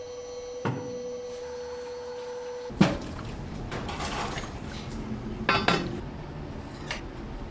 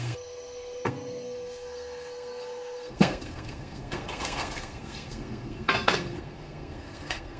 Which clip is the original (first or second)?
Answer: first